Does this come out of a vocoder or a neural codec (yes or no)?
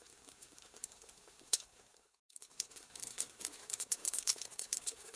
yes